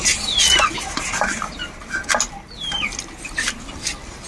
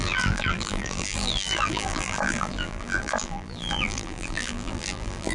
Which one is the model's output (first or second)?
second